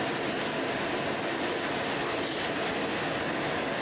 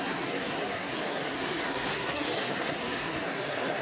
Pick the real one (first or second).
first